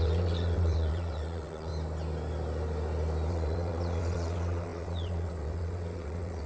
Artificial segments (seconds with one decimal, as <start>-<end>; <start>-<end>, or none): 0.0-1.7; 3.3-6.5